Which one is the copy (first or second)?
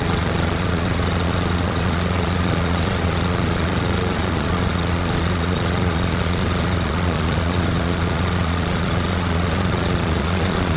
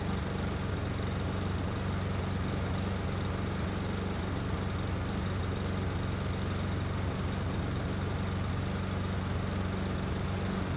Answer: first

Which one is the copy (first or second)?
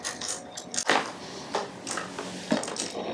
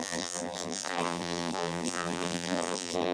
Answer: second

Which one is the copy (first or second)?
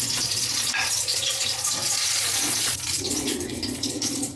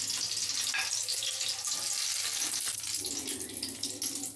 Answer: first